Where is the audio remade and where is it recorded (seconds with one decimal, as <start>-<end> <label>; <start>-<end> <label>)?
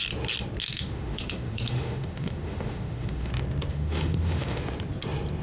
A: 0.0-0.6 recorded; 0.6-3.3 remade; 3.3-3.7 recorded; 3.7-4.6 remade; 4.6-5.4 recorded